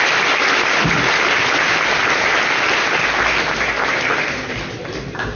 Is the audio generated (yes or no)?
no